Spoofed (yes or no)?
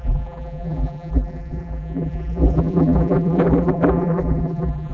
yes